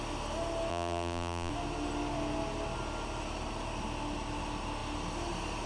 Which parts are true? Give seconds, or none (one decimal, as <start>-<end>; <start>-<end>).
0.0-0.7; 1.5-5.7